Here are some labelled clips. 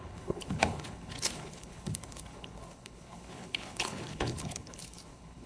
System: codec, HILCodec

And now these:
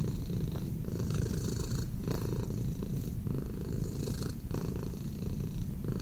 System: vocoder, BigVGAN v2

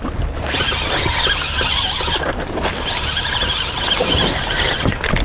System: none